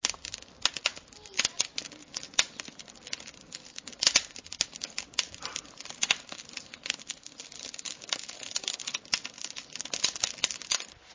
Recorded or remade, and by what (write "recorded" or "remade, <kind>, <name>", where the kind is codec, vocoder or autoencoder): recorded